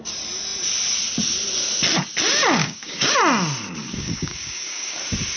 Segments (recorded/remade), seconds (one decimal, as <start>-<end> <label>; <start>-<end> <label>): 0.0-2.6 recorded; 2.6-3.1 remade; 3.1-3.8 recorded; 3.8-5.0 remade; 5.0-5.4 recorded